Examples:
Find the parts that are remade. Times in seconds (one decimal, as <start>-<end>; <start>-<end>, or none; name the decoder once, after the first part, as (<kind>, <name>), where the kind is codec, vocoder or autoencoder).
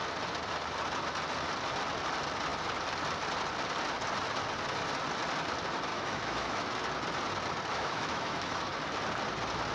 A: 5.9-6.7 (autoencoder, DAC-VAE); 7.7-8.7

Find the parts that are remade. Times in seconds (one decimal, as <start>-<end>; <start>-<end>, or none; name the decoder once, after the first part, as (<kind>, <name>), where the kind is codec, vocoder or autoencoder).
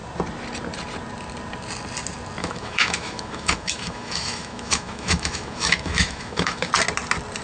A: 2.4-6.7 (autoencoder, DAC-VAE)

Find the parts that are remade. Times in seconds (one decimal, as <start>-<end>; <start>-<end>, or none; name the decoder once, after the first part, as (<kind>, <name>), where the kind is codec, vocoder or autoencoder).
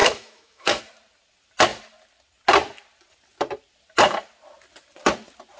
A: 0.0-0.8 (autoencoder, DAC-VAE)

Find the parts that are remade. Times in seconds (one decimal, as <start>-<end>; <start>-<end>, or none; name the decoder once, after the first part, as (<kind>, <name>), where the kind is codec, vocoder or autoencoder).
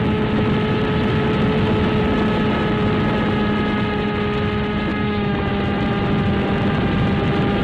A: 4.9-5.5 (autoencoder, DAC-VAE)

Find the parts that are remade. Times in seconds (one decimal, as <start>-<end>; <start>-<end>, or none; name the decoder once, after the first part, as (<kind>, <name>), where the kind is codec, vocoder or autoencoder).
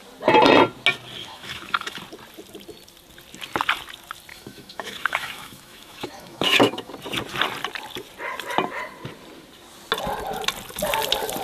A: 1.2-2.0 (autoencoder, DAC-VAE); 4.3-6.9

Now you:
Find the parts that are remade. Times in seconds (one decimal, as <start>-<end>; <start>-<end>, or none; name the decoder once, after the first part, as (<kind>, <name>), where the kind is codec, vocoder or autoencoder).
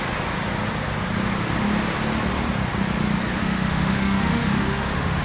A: 3.4-5.2 (autoencoder, DAC-VAE)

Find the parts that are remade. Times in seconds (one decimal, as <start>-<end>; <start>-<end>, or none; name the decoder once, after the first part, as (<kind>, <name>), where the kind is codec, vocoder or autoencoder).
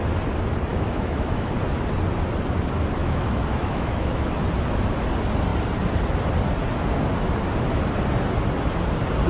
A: 0.7-1.5 (autoencoder, DAC-VAE); 3.0-4.3